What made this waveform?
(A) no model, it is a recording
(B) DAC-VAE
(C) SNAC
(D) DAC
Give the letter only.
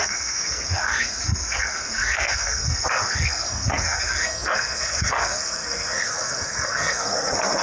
C